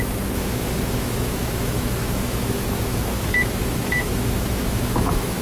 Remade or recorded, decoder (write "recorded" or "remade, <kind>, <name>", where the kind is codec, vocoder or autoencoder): remade, autoencoder, DAC-VAE